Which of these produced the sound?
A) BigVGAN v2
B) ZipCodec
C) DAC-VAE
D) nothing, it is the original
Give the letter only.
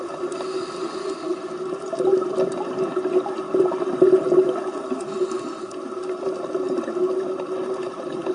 D